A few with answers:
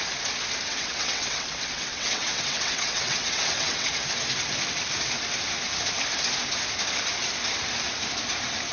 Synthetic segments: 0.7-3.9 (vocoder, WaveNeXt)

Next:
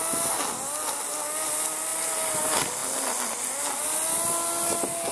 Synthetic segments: none

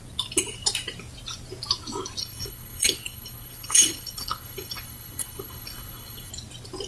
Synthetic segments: 2.2-6.3 (codec, HILCodec)

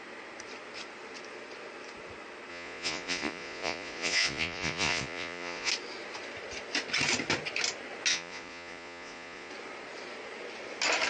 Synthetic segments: 2.5-5.7 (vocoder, Vocos); 8.1-9.5

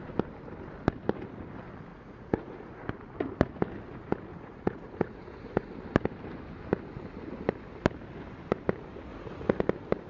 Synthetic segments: 1.9-2.8 (vocoder, Vocos); 4.3-5.7; 9.1-9.6

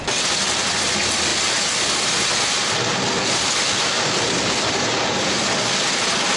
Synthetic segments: none

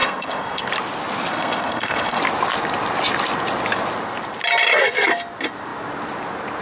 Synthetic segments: 0.0-0.7 (codec, SNAC); 1.3-2.2

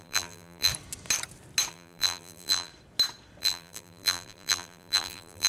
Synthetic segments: 0.0-0.7 (vocoder, BigVGAN v2); 1.7-2.7; 3.4-5.5